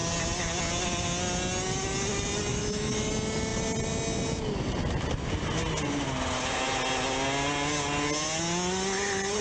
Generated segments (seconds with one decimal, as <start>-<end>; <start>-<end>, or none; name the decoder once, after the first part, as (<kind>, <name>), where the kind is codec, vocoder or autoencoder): 2.5-3.1 (autoencoder, DAC-VAE)